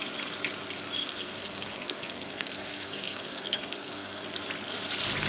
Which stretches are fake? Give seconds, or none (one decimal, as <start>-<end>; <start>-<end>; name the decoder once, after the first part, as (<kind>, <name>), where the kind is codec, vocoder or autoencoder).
1.0-4.2 (codec, SNAC)